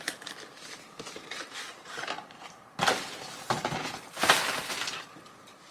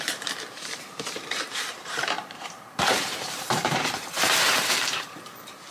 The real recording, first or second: first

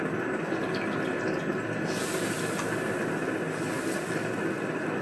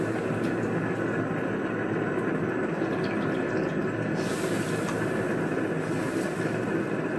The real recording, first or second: first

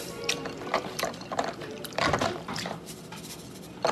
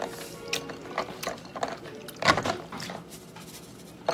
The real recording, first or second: second